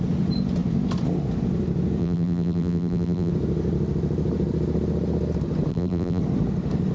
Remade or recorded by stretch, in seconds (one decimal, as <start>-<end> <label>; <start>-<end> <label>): 0.0-2.0 recorded; 2.0-3.3 remade; 3.3-5.7 recorded; 5.7-6.2 remade; 6.2-6.9 recorded